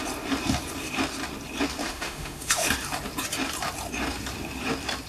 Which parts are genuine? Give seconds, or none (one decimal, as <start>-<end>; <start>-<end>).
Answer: 0.0-1.8; 2.7-5.1